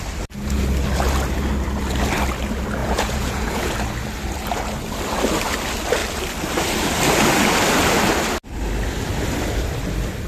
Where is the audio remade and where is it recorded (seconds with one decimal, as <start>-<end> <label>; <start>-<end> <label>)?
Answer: 0.0-2.8 recorded; 2.8-3.7 remade; 3.7-10.3 recorded